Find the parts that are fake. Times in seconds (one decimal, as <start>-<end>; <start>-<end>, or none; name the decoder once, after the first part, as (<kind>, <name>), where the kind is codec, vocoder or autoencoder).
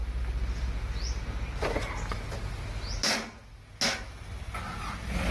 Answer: none